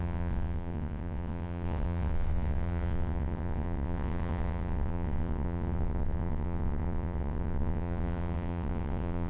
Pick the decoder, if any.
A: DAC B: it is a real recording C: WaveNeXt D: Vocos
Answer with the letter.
C